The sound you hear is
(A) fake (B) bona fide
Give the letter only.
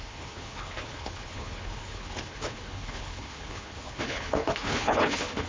A